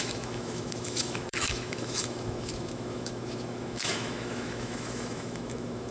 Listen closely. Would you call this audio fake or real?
fake